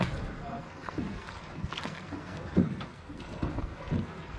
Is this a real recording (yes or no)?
no